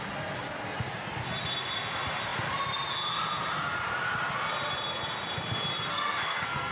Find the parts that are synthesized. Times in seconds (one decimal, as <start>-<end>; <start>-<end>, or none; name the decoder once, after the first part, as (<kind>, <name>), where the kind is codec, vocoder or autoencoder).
5.9-6.7 (codec, SNAC)